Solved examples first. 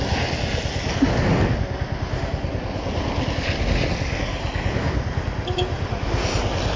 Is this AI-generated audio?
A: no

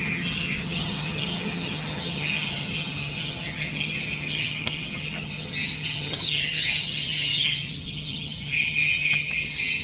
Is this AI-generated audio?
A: yes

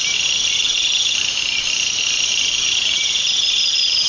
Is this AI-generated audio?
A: no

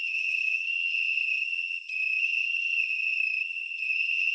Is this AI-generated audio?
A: yes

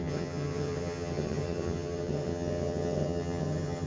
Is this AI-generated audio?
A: yes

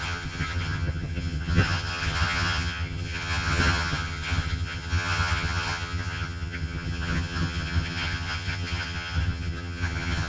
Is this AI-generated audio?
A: yes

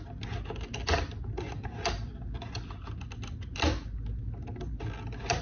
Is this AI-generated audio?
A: no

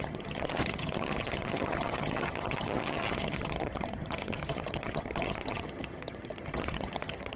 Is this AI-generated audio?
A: yes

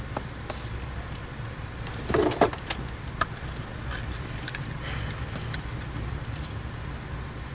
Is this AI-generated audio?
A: no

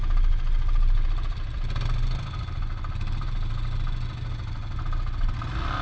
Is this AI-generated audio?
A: no